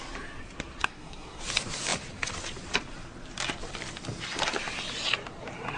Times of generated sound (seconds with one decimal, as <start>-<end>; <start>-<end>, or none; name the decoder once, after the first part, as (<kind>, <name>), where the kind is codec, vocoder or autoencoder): 0.8-1.4 (codec, SNAC)